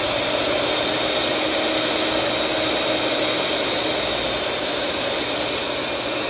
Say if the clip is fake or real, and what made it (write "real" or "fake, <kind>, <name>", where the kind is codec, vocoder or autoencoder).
real